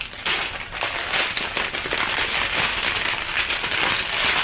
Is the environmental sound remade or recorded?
recorded